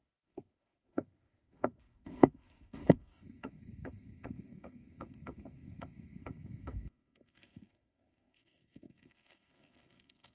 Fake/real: fake